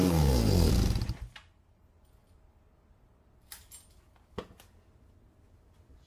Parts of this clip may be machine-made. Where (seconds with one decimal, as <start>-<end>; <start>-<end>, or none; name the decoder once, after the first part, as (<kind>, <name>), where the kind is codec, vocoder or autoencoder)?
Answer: 0.0-0.7 (codec, SNAC)